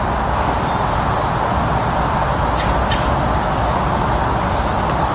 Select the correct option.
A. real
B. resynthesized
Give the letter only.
A